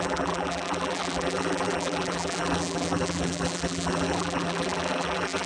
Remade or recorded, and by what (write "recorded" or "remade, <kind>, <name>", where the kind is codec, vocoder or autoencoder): remade, vocoder, BigVGAN v2